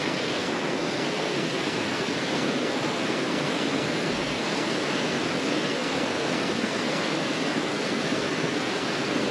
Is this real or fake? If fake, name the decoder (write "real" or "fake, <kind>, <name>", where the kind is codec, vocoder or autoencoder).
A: fake, codec, SNAC